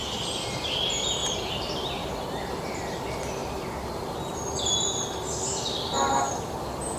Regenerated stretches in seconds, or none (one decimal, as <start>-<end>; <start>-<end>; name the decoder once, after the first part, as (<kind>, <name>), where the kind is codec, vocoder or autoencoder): 1.2-2.1 (vocoder, BigVGAN v2); 3.4-4.0